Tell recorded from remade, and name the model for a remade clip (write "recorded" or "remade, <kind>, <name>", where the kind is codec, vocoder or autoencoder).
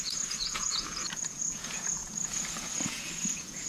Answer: remade, vocoder, Vocos